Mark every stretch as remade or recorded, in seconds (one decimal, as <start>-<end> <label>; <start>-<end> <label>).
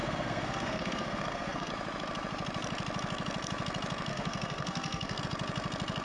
0.0-1.7 remade; 1.7-4.1 recorded; 4.1-5.2 remade; 5.2-6.0 recorded